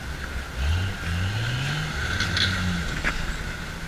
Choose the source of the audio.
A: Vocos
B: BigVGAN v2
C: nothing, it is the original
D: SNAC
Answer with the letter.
C